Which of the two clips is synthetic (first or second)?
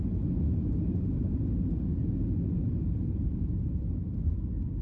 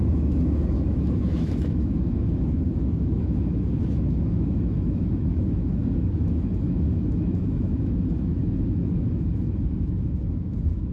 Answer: second